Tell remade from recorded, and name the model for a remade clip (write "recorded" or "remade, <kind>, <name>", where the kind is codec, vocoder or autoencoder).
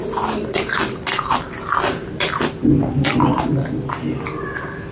recorded